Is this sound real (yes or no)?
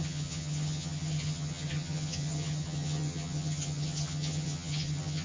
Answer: no